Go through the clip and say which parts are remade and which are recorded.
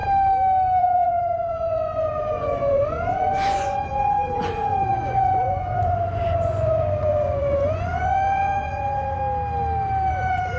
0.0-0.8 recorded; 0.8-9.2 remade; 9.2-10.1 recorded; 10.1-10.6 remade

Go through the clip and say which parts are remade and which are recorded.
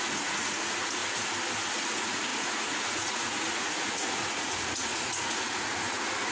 0.0-1.0 remade; 1.0-1.9 recorded; 1.9-6.3 remade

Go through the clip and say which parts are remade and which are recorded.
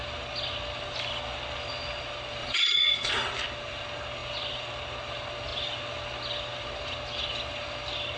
0.0-2.4 recorded; 2.4-3.3 remade; 3.3-8.2 recorded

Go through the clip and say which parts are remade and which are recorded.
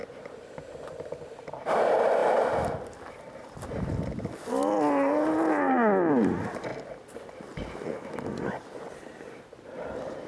0.0-10.3 recorded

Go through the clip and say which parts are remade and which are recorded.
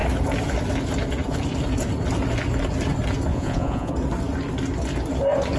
0.0-3.3 recorded; 3.3-3.9 remade; 3.9-5.6 recorded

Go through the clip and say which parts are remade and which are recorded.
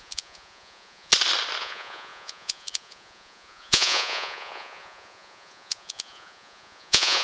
0.0-1.1 remade; 1.1-1.6 recorded; 1.6-7.2 remade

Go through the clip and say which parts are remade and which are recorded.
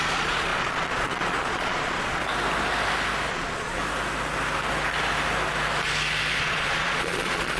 0.0-2.2 remade; 2.2-3.3 recorded; 3.3-3.8 remade; 3.8-6.4 recorded; 6.4-7.6 remade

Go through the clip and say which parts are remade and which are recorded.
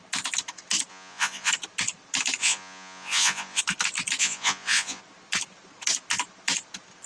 0.0-0.9 recorded; 0.9-1.5 remade; 1.5-2.4 recorded; 2.4-3.6 remade; 3.6-4.2 recorded; 4.2-5.0 remade; 5.0-7.1 recorded